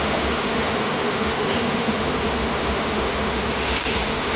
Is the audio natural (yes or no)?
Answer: no